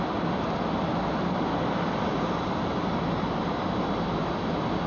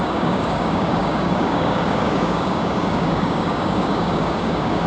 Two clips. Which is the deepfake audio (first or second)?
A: second